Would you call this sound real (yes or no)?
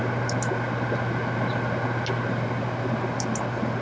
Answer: yes